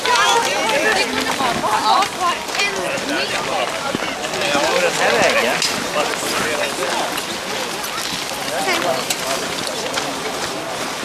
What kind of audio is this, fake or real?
real